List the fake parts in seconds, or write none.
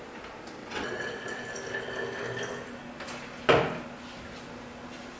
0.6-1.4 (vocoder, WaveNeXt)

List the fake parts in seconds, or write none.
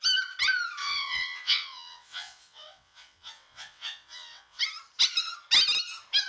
0.8-4.6 (vocoder, WaveNeXt)